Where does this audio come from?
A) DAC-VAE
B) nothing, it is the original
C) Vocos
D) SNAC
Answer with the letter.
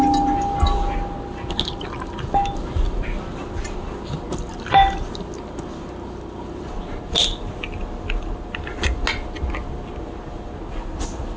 B